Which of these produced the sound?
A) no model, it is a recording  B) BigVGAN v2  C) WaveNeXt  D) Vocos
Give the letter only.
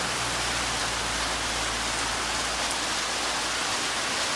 A